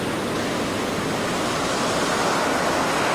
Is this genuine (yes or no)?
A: yes